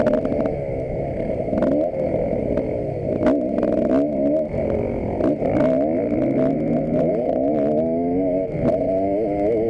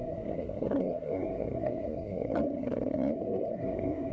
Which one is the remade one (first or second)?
second